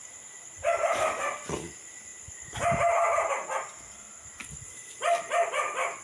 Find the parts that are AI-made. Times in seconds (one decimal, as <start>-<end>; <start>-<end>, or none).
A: none